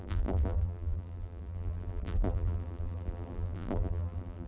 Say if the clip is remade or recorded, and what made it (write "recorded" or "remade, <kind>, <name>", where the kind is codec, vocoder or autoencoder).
remade, vocoder, BigVGAN v2